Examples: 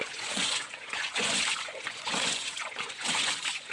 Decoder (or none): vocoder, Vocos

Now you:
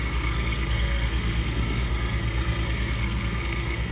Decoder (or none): codec, SNAC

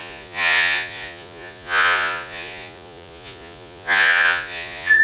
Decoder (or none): vocoder, Vocos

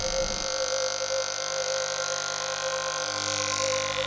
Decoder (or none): none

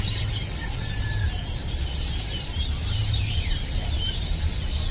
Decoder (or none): vocoder, BigVGAN v2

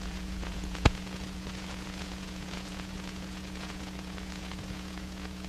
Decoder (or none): vocoder, Vocos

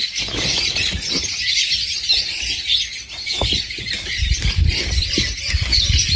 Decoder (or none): none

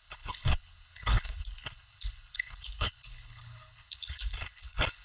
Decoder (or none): codec, HILCodec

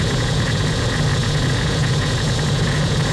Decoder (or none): vocoder, Vocos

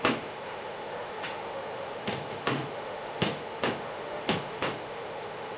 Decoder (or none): autoencoder, DAC-VAE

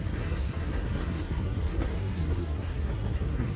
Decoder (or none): codec, SNAC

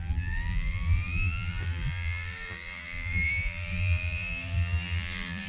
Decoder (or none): vocoder, BigVGAN v2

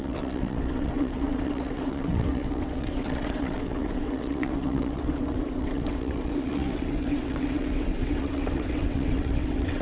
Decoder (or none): vocoder, WaveNeXt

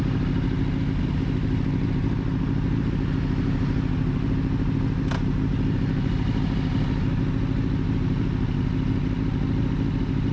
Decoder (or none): none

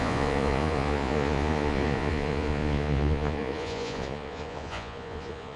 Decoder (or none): vocoder, Vocos